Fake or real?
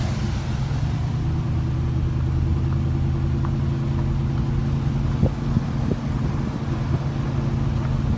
real